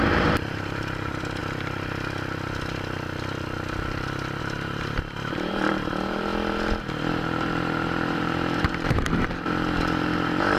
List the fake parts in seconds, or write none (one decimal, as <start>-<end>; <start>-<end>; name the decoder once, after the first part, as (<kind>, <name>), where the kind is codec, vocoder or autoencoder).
0.0-1.4 (vocoder, BigVGAN v2); 4.4-6.3; 6.8-10.6